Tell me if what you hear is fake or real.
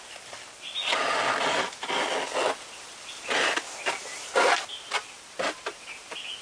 real